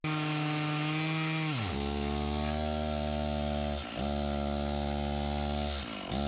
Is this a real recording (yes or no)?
yes